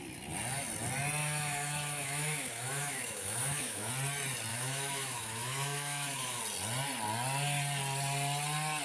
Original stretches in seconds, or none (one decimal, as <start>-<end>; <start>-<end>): 0.0-1.2; 3.9-4.5; 6.4-8.8